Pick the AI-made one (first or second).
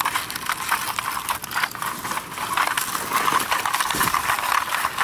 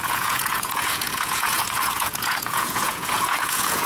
second